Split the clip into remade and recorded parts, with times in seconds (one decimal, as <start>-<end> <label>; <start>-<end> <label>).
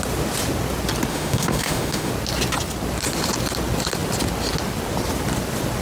0.0-1.1 recorded; 1.1-2.1 remade; 2.1-5.8 recorded